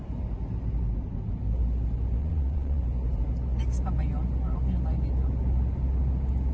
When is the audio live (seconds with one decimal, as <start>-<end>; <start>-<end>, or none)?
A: 0.0-2.2; 2.8-6.5